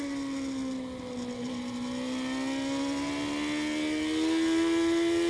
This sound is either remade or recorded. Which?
recorded